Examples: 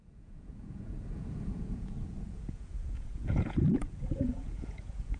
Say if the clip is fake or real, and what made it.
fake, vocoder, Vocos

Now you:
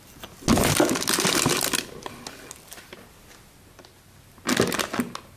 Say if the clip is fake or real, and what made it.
real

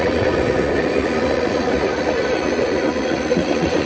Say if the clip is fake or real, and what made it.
fake, vocoder, Vocos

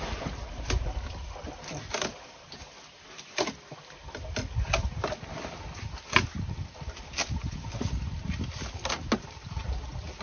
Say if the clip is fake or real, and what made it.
real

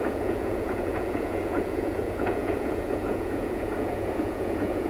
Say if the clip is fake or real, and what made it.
fake, vocoder, Vocos